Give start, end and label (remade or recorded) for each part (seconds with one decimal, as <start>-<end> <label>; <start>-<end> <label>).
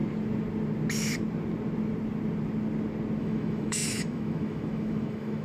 0.0-3.2 recorded; 3.2-5.4 remade